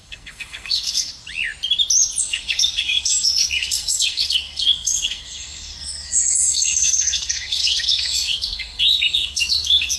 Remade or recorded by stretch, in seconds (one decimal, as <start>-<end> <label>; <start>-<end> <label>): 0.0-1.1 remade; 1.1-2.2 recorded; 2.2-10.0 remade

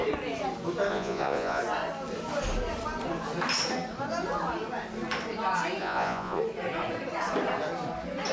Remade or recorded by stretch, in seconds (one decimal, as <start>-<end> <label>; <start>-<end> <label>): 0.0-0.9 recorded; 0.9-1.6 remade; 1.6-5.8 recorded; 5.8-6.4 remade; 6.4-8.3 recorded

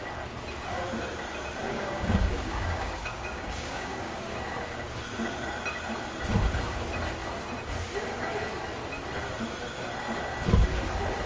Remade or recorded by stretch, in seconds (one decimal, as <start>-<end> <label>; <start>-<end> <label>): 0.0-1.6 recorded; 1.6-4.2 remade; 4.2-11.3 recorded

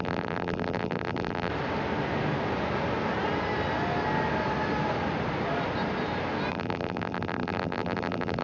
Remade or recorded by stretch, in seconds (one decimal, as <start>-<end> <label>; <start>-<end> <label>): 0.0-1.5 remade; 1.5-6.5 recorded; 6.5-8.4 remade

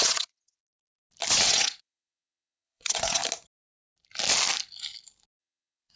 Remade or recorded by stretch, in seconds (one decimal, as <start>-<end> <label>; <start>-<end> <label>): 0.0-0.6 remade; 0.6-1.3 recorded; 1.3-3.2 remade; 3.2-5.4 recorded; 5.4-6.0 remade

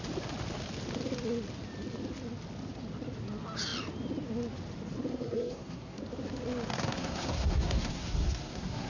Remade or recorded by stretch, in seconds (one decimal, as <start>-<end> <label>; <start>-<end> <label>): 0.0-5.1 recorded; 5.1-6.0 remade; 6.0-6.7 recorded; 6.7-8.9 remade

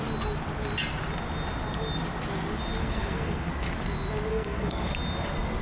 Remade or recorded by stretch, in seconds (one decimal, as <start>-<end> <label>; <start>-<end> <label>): 0.0-2.8 recorded; 2.8-3.5 remade; 3.5-4.3 recorded; 4.3-4.9 remade; 4.9-5.6 recorded